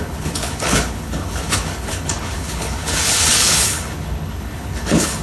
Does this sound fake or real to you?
fake